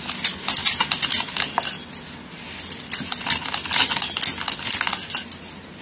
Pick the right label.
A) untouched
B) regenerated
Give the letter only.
A